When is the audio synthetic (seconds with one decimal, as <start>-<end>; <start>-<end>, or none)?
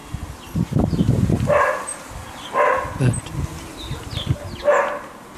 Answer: 0.0-1.9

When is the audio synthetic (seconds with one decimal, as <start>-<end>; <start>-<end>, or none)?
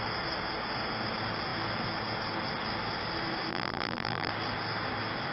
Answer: 3.5-4.3